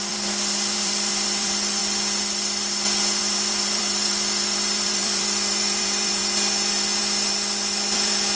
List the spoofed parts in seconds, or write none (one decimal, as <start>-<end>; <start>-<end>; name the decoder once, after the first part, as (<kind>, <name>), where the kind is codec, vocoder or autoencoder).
0.0-1.8 (vocoder, BigVGAN v2); 3.2-6.2; 7.0-8.4